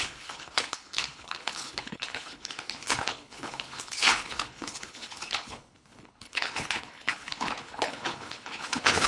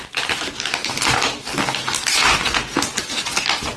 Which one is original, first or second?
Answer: second